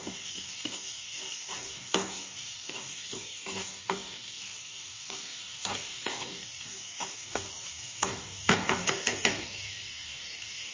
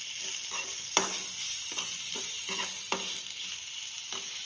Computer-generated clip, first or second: first